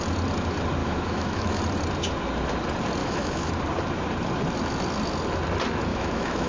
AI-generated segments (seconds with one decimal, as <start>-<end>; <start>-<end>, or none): 0.8-1.6; 3.0-3.5; 5.9-6.5